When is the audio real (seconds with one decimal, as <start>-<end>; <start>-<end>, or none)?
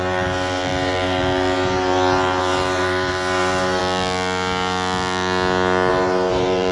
3.8-5.9